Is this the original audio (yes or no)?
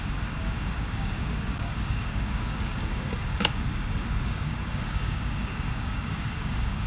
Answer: no